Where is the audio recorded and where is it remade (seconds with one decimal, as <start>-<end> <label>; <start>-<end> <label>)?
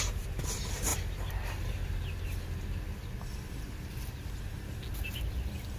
0.0-5.8 recorded